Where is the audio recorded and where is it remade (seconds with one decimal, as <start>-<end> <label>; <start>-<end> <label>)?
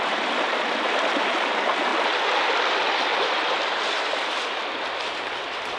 0.0-3.1 recorded; 3.1-3.8 remade; 3.8-5.8 recorded